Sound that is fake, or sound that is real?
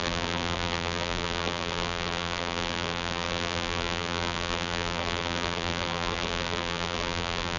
fake